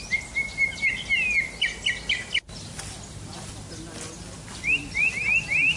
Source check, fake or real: real